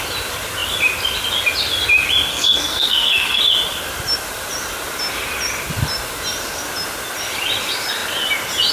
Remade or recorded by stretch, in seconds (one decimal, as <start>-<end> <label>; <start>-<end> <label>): 0.0-2.3 recorded; 2.3-3.4 remade; 3.4-8.7 recorded